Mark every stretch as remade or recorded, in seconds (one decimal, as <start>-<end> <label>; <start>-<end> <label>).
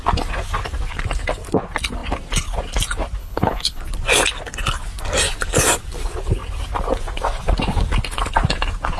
0.0-3.2 recorded; 3.2-3.8 remade; 3.8-9.0 recorded